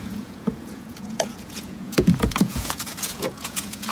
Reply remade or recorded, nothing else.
remade